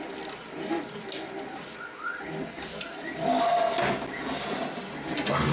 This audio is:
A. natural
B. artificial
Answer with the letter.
A